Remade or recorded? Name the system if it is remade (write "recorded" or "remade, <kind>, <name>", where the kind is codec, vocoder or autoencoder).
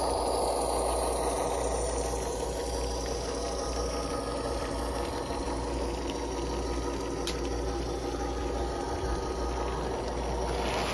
recorded